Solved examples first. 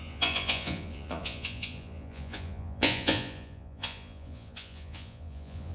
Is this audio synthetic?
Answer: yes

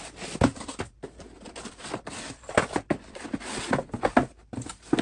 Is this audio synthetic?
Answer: no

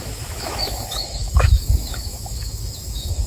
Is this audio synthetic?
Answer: yes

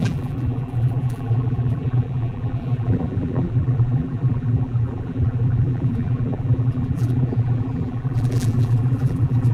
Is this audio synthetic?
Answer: yes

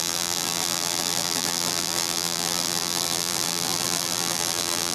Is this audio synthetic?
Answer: yes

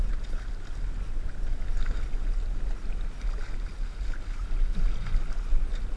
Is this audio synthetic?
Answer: no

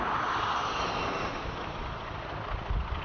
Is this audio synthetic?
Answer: no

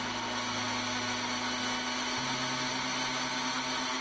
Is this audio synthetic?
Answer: no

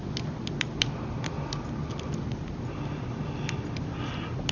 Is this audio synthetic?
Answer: no